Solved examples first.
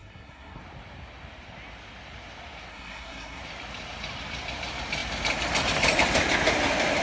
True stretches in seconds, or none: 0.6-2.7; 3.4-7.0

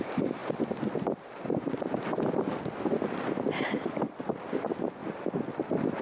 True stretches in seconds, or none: 0.0-6.0

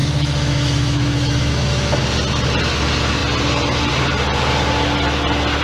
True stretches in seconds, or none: 2.0-5.6

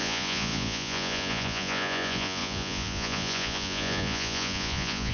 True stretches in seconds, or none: none